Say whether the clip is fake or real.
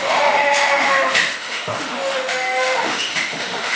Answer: fake